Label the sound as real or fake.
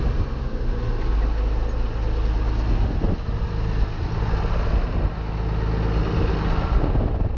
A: real